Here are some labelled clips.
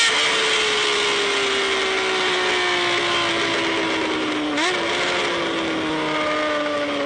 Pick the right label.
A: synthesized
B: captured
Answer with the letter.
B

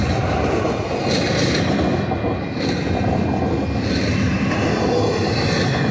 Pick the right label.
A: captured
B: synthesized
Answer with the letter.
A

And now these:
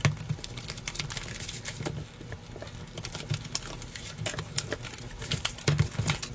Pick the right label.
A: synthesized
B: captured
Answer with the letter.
B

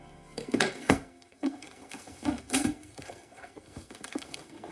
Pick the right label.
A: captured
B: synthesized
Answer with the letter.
B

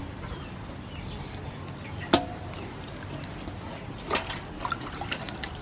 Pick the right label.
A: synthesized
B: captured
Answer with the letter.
B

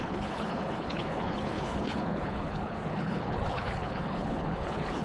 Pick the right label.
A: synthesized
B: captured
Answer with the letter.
A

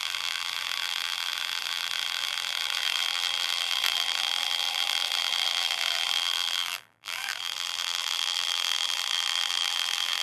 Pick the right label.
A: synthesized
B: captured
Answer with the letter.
A